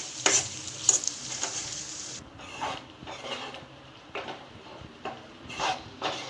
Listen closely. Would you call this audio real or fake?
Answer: fake